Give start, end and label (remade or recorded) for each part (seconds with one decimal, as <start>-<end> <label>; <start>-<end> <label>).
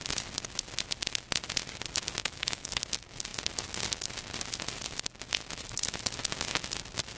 0.0-2.2 recorded; 2.2-2.8 remade; 2.8-7.2 recorded